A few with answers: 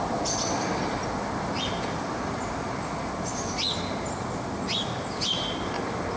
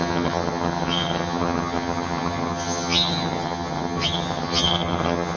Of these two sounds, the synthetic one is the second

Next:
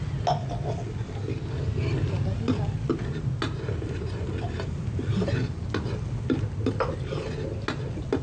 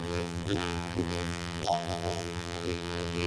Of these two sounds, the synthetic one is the second